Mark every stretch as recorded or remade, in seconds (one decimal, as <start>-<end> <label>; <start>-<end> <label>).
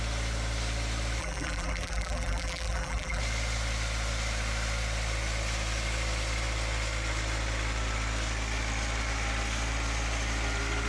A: 0.0-1.2 recorded; 1.2-3.2 remade; 3.2-10.9 recorded